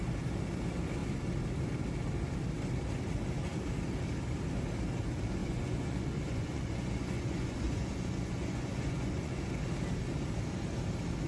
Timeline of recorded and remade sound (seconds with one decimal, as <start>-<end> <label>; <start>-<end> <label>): 0.0-5.4 recorded; 5.4-9.4 remade; 9.4-11.3 recorded